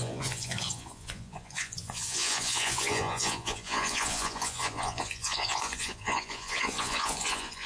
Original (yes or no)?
no